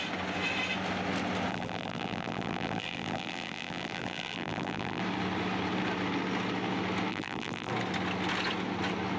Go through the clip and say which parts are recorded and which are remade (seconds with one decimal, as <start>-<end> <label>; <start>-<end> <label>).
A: 0.0-1.5 recorded; 1.5-5.0 remade; 5.0-7.1 recorded; 7.1-7.7 remade; 7.7-9.2 recorded